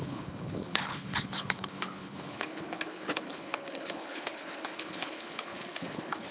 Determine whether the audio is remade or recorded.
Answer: remade